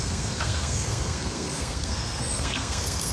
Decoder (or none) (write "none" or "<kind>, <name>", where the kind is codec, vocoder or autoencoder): codec, SNAC